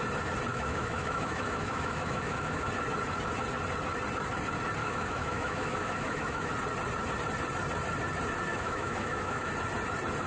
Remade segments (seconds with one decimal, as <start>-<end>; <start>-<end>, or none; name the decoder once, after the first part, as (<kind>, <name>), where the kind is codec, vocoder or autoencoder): 0.5-2.7 (autoencoder, DAC-VAE); 4.8-6.5; 8.5-9.5